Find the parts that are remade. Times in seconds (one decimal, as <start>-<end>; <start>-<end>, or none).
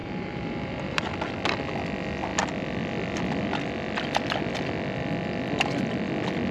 0.0-1.0